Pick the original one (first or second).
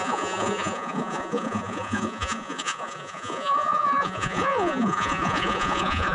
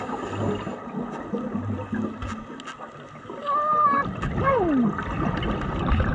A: second